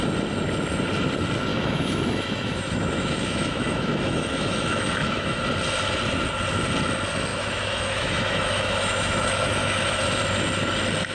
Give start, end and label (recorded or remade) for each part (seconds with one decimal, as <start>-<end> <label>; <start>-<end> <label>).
0.0-1.5 recorded; 1.5-5.4 remade; 5.4-7.3 recorded; 7.3-10.0 remade; 10.0-11.1 recorded